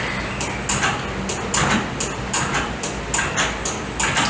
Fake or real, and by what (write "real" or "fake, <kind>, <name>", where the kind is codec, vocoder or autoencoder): real